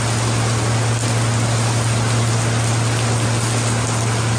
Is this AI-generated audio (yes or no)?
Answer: no